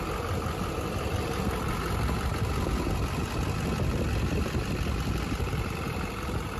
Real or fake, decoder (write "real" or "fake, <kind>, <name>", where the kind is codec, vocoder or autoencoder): real